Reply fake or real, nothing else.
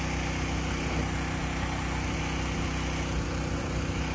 real